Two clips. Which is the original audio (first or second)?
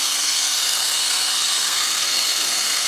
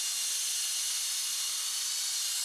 second